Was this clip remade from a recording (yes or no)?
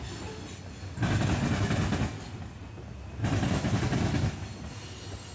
no